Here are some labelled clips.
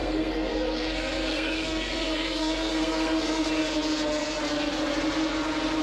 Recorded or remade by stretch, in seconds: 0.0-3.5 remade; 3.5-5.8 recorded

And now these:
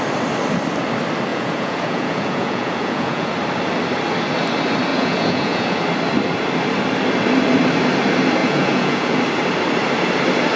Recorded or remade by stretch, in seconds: 0.0-1.3 recorded; 1.3-3.3 remade; 3.3-4.9 recorded; 4.9-5.8 remade; 5.8-8.4 recorded; 8.4-9.2 remade; 9.2-10.6 recorded

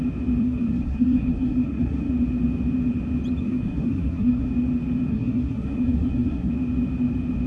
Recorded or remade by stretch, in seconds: 0.0-0.4 recorded; 0.4-2.1 remade; 2.1-3.4 recorded; 3.4-4.5 remade; 4.5-5.1 recorded; 5.1-6.5 remade; 6.5-7.5 recorded

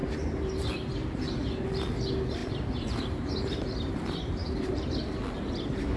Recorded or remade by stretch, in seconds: 0.0-0.7 remade; 0.7-2.4 recorded; 2.4-3.7 remade; 3.7-4.4 recorded; 4.4-4.9 remade; 4.9-6.0 recorded

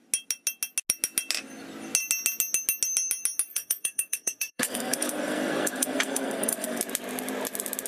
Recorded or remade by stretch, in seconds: 0.0-3.5 recorded; 3.5-6.8 remade; 6.8-7.9 recorded

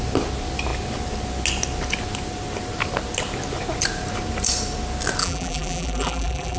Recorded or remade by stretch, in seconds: 0.0-5.2 recorded; 5.2-6.6 remade